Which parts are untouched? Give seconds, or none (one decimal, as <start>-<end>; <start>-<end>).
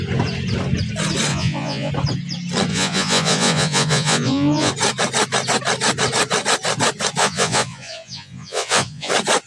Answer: 0.0-1.3; 1.9-2.7; 4.7-7.2; 9.1-9.5